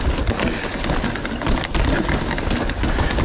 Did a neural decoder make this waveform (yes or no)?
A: no